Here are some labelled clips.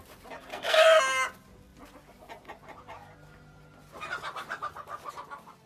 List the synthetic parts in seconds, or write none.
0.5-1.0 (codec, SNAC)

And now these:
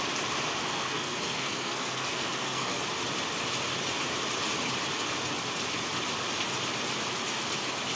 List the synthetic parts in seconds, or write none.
0.6-2.8 (codec, SNAC)

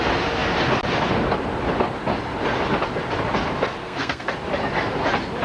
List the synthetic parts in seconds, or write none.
3.8-4.3 (codec, SNAC)

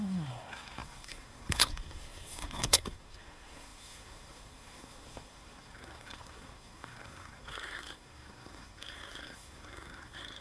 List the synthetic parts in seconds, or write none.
0.0-10.4 (codec, SNAC)

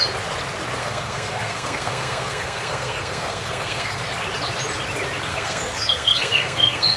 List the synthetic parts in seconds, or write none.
0.8-4.0 (codec, SNAC); 5.3-7.0